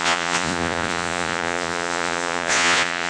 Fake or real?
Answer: fake